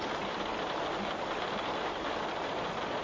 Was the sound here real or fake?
real